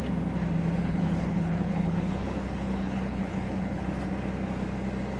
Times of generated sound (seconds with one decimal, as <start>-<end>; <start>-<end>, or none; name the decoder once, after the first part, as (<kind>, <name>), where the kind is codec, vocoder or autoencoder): 0.8-3.8 (codec, HILCodec)